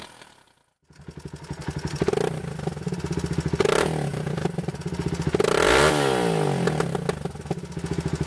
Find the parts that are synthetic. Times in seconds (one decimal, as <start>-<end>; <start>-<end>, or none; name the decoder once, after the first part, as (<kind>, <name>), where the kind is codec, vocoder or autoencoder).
4.1-5.1 (vocoder, BigVGAN v2)